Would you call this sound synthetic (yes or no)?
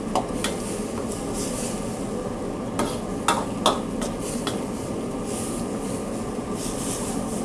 no